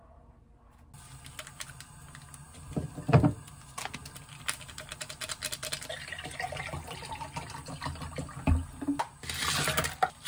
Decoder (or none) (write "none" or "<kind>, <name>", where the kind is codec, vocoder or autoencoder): none